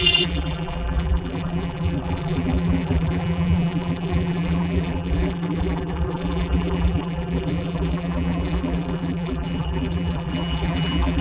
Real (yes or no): no